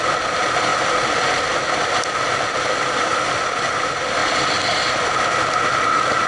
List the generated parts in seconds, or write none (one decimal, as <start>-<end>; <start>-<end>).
none